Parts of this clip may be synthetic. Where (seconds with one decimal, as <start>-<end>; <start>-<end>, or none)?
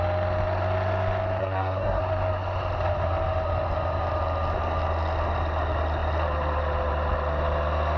1.4-2.0